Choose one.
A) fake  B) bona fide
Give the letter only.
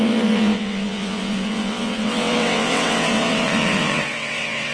A